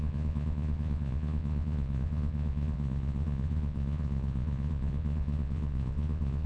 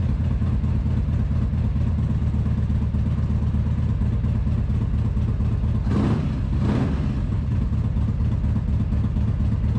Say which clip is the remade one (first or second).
first